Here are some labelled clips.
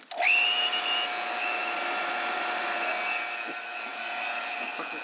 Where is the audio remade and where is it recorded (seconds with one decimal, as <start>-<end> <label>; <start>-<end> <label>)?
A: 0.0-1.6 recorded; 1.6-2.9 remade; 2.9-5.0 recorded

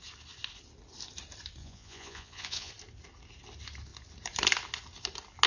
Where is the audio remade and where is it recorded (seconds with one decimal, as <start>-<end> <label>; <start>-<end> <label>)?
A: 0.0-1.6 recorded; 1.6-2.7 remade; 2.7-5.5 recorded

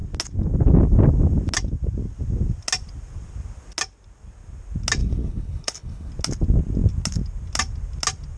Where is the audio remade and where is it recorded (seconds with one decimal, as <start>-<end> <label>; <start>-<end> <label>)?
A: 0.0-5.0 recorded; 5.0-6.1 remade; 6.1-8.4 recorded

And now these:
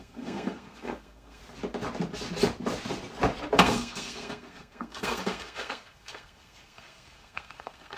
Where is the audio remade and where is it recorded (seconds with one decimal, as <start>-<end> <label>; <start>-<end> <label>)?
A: 0.0-1.4 remade; 1.4-3.6 recorded; 3.6-8.0 remade

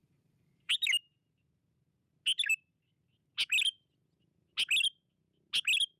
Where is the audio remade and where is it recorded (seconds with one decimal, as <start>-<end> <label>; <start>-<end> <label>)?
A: 0.0-0.7 remade; 0.7-6.0 recorded